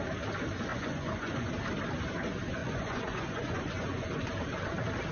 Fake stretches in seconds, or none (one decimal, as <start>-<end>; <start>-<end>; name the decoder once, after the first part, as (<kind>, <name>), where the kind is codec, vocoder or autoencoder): 0.7-1.5 (vocoder, Vocos); 2.6-4.2